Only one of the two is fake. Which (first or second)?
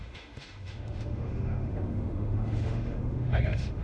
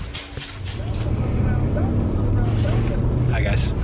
first